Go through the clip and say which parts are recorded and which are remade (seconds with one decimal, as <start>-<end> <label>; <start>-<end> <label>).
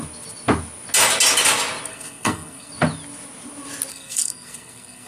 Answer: 0.0-1.9 recorded; 1.9-2.7 remade; 2.7-3.9 recorded; 3.9-5.1 remade